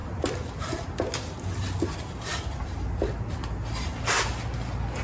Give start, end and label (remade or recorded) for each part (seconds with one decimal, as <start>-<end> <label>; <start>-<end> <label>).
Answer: 0.0-5.0 recorded